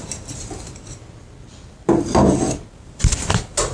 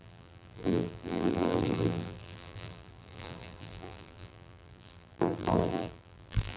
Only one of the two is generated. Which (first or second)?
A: second